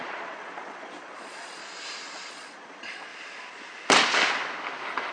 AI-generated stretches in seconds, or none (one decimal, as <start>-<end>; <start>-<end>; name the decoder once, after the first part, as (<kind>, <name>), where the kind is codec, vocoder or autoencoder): 0.0-1.6 (vocoder, Vocos); 2.3-3.1